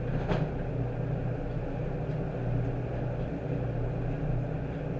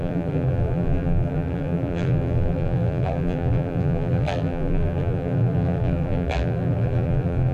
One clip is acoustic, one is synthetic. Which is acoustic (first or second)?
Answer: first